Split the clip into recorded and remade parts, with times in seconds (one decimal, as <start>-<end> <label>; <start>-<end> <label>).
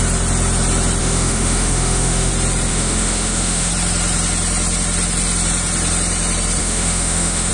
0.0-1.0 recorded; 1.0-2.3 remade; 2.3-2.7 recorded; 2.7-3.7 remade; 3.7-6.6 recorded; 6.6-7.5 remade